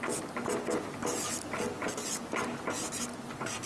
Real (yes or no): yes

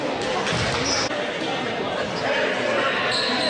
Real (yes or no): yes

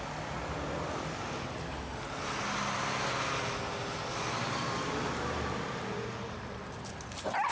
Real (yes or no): yes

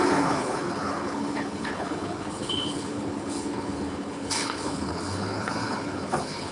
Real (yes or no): no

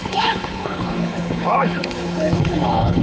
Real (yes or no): no